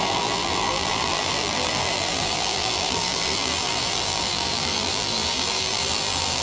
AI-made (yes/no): yes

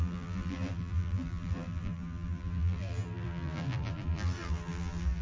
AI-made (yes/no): yes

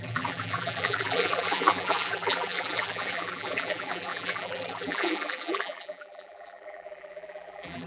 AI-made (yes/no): yes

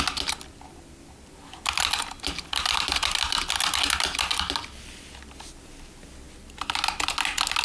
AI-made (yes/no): no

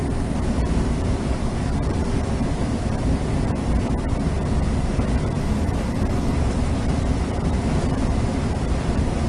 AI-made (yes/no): yes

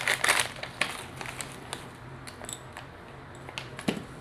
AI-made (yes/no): no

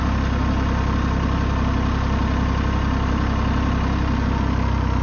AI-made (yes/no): no